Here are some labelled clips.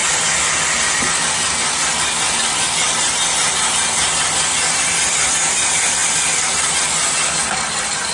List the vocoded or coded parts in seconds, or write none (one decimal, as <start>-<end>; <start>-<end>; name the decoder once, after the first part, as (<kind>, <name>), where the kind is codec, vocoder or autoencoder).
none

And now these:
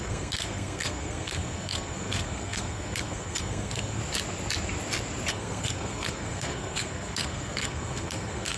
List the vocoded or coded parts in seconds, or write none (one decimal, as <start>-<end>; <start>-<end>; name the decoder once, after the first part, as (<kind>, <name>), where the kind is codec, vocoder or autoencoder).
0.0-4.0 (codec, SNAC); 5.3-8.6

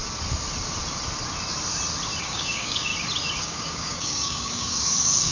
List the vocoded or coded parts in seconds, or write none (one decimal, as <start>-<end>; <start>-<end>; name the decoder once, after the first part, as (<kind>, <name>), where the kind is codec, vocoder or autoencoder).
2.2-2.9 (codec, DAC); 3.4-5.3